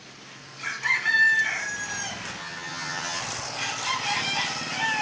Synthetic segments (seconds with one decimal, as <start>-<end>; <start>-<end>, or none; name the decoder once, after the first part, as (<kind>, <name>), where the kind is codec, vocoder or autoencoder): 2.4-3.2 (vocoder, HiFi-GAN)